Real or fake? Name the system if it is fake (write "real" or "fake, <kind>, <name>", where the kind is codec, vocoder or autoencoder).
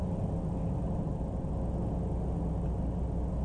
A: real